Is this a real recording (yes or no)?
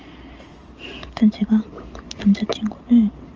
yes